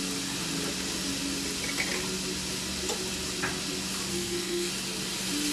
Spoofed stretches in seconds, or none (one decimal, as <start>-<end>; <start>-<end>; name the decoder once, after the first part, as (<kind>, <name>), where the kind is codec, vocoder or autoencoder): 4.1-4.7 (codec, SNAC)